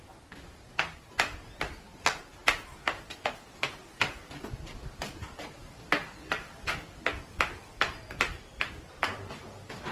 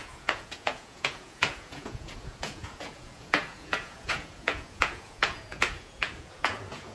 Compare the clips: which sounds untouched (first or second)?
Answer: first